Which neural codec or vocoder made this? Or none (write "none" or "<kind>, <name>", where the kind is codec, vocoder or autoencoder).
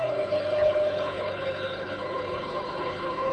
codec, HILCodec